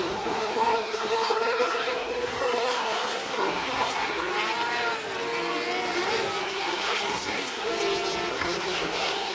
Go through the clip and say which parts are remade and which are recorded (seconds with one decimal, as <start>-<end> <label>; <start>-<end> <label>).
0.0-4.3 remade; 4.3-6.4 recorded; 6.4-7.7 remade; 7.7-8.3 recorded; 8.3-9.3 remade